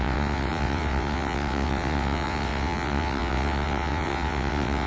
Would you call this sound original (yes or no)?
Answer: no